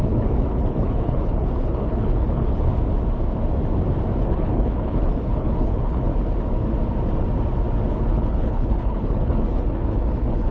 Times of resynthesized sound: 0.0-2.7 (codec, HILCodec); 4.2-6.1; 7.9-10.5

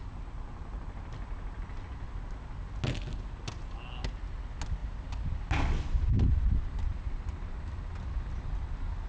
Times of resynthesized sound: none

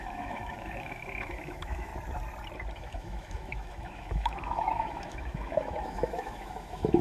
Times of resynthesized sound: 0.0-1.9 (autoencoder, DAC-VAE); 2.7-7.0

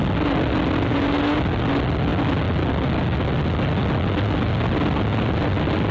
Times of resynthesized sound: none

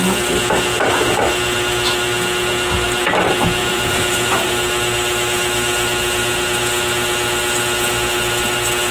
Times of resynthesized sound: 3.6-4.5 (vocoder, Vocos)

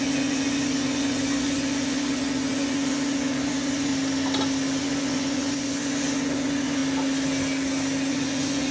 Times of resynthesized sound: 0.0-3.9 (vocoder, Vocos); 4.8-6.8; 8.1-8.7

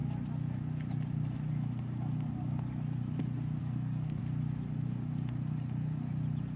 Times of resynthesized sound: 3.6-4.2 (codec, SNAC)